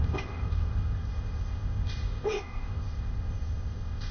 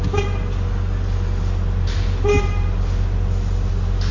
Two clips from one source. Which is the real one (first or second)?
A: second